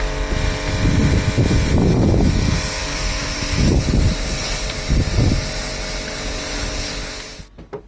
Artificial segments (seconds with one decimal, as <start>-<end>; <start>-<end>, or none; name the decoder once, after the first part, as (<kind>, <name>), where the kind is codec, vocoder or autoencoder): 1.0-1.7 (vocoder, BigVGAN v2); 2.8-3.4; 4.1-5.0